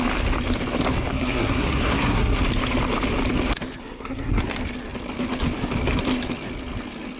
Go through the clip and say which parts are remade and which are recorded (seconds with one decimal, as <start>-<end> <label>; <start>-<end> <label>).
0.0-1.1 recorded; 1.1-2.4 remade; 2.4-3.8 recorded; 3.8-4.4 remade; 4.4-7.2 recorded